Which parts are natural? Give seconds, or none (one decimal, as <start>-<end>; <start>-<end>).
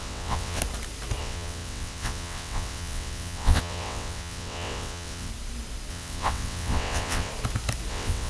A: 0.6-1.2; 5.3-5.9; 7.3-7.9